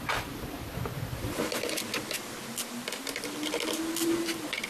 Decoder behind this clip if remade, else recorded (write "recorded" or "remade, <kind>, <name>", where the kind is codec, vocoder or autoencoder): recorded